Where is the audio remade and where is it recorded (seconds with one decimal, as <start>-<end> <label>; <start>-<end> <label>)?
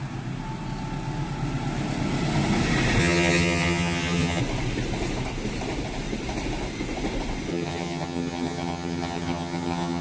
0.0-3.0 recorded; 3.0-4.4 remade; 4.4-7.5 recorded; 7.5-10.0 remade